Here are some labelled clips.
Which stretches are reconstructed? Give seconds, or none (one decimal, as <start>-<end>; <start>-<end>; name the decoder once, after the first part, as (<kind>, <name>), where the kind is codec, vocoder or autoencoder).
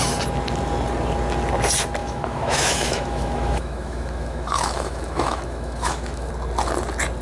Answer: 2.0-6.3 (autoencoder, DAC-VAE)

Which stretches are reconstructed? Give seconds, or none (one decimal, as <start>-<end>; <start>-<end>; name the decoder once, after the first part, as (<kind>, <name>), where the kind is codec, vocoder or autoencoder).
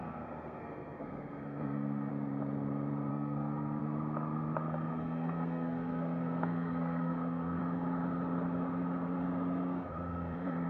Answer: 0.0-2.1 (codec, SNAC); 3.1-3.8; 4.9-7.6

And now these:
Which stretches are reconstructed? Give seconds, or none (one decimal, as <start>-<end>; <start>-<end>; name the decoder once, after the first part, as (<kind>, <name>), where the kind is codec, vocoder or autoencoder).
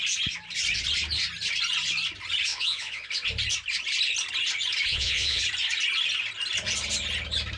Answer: 2.5-3.1 (vocoder, Vocos); 4.9-5.4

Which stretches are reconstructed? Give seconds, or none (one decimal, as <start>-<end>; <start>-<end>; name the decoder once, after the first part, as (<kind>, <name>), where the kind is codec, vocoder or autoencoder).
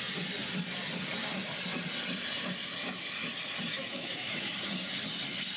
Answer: 3.7-4.6 (autoencoder, DAC-VAE)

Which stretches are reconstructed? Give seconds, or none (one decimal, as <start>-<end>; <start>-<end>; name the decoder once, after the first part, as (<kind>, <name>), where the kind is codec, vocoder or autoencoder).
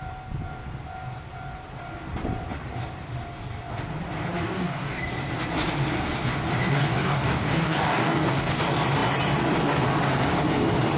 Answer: 4.4-5.0 (codec, DAC); 6.8-8.6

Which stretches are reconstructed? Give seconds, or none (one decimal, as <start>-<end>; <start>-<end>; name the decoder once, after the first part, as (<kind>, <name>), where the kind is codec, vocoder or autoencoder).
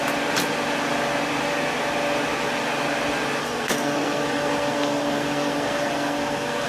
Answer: 3.4-6.7 (codec, SNAC)